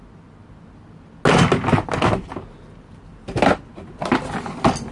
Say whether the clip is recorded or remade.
recorded